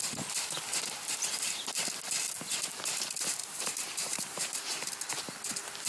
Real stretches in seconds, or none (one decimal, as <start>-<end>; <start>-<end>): 0.0-0.7; 1.8-3.4; 4.6-5.9